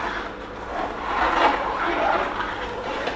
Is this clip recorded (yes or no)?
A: yes